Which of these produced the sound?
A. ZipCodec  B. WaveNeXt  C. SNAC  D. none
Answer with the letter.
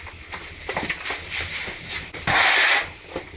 D